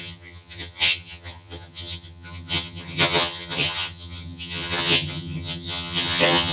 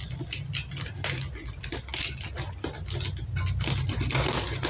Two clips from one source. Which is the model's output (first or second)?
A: first